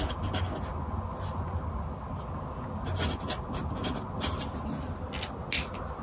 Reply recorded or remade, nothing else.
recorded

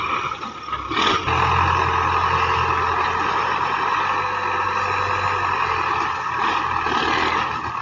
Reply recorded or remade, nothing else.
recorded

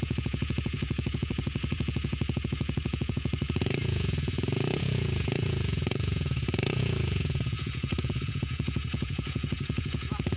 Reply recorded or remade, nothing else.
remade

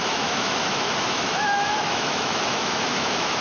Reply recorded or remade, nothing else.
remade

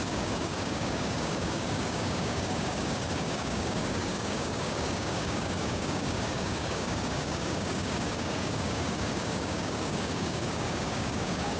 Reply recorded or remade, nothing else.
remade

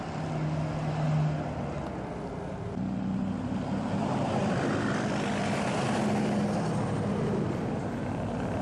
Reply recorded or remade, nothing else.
recorded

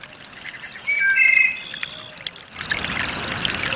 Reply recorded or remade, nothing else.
recorded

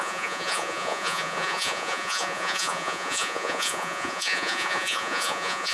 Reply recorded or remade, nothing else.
remade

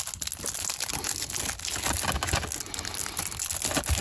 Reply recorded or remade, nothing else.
recorded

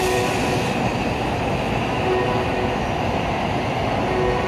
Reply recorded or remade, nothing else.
recorded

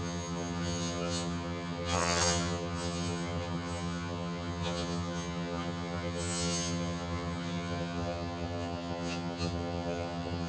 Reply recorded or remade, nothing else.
remade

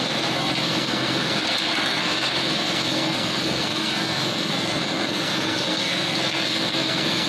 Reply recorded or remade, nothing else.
remade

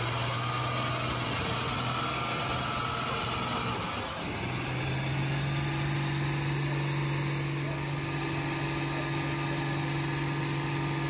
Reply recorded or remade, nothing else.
recorded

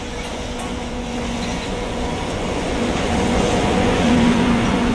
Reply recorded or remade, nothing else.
remade